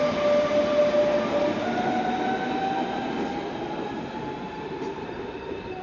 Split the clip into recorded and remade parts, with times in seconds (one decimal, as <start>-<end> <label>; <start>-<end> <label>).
0.0-1.4 remade; 1.4-4.7 recorded; 4.7-5.8 remade